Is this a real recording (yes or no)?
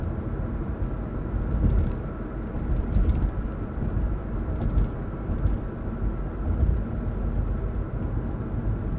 yes